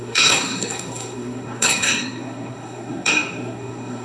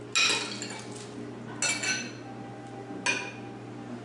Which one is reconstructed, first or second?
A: first